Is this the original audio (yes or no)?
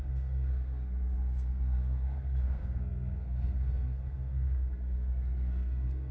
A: no